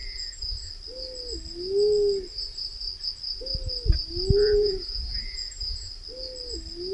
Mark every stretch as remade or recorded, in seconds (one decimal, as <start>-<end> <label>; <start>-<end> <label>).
0.0-0.7 remade; 0.7-4.4 recorded; 4.4-5.9 remade; 5.9-6.9 recorded